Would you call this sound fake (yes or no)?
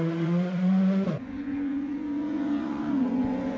yes